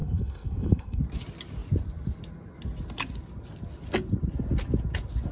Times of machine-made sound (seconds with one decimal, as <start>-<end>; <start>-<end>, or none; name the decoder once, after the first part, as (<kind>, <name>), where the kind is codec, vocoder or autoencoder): 0.0-1.0 (codec, SNAC)